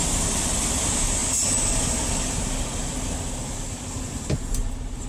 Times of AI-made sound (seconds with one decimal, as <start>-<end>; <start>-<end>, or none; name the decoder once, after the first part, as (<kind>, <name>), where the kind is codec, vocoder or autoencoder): none